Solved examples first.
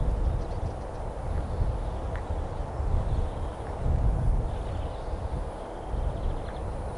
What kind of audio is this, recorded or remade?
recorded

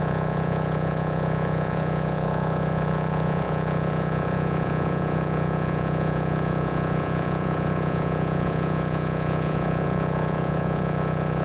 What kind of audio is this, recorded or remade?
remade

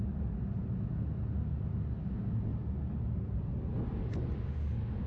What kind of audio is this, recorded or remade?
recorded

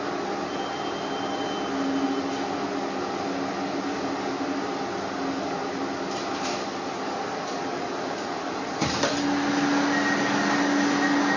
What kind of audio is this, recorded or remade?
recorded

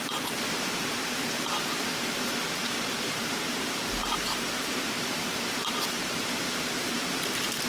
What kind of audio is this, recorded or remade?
remade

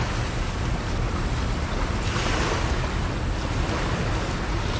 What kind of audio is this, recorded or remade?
recorded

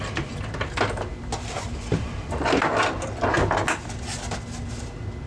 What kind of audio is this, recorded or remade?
recorded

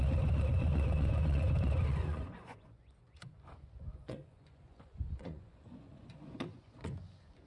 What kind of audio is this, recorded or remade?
remade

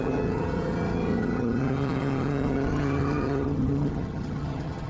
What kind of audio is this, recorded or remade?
remade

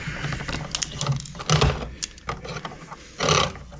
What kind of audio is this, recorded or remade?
recorded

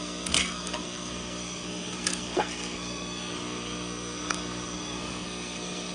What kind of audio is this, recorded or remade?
remade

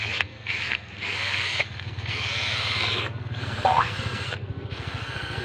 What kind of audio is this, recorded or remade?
remade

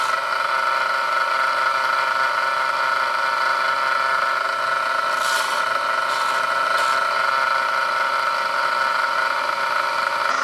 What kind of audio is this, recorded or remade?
recorded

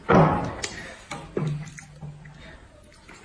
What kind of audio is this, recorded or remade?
recorded